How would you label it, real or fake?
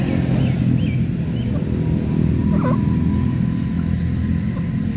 real